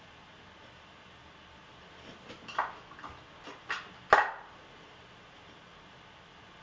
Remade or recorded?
recorded